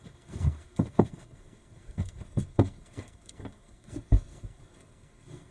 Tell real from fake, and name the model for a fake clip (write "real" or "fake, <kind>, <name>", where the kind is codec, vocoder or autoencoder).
fake, codec, SNAC